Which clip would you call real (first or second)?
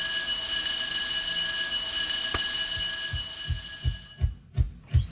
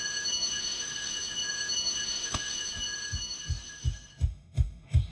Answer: first